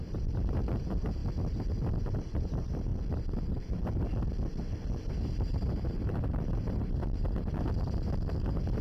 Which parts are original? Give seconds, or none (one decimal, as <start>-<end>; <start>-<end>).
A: 1.2-2.0; 2.9-3.5; 4.1-5.0